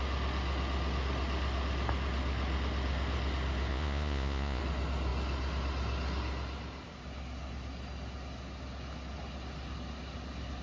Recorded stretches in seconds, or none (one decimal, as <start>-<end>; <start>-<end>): 0.0-3.7; 4.6-10.6